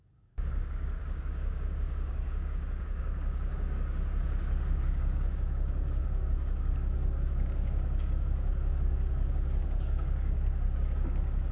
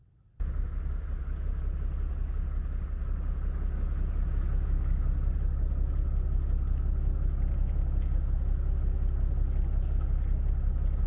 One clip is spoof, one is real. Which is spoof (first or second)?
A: first